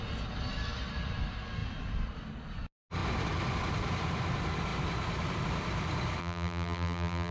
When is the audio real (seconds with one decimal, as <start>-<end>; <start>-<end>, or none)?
0.0-6.2